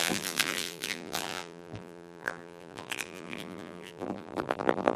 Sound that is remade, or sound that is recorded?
remade